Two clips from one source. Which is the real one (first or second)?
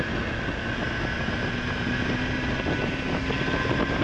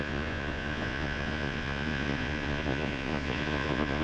first